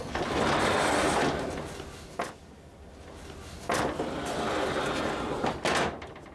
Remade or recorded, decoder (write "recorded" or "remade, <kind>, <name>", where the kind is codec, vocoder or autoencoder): recorded